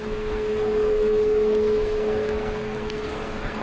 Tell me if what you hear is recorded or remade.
remade